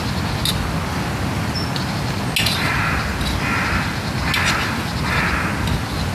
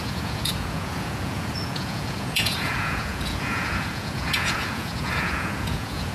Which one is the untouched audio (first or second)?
first